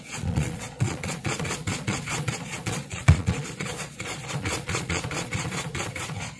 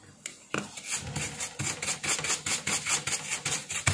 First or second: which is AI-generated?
first